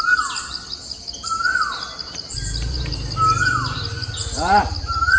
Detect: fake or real real